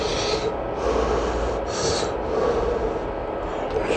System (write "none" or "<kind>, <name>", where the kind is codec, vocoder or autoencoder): none